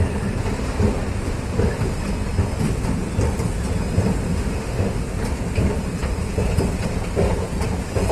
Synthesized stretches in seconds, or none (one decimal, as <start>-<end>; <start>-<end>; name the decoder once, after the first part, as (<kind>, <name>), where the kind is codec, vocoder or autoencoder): 4.3-5.0 (autoencoder, DAC-VAE)